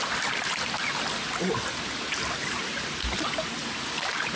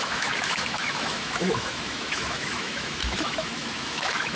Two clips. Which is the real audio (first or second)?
first